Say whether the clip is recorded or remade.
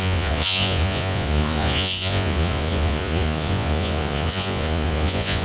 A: remade